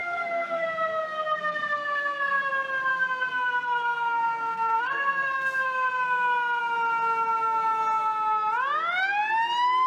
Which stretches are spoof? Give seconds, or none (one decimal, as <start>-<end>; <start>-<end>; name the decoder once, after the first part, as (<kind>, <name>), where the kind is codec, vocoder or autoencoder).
0.0-2.5 (codec, SNAC); 2.9-6.6